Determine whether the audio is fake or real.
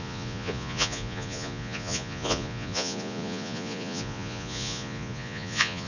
fake